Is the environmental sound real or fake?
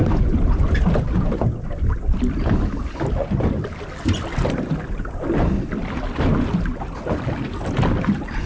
real